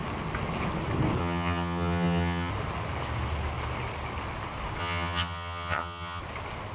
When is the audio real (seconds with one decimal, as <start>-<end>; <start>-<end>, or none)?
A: 0.0-1.2; 2.5-4.8; 6.2-6.7